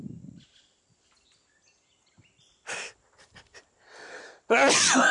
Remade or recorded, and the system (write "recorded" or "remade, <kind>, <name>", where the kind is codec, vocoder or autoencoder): recorded